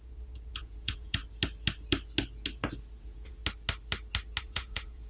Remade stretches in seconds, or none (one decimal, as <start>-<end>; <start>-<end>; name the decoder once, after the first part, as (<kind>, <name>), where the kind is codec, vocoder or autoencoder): 0.0-1.2 (vocoder, Vocos); 3.0-3.4; 4.4-5.1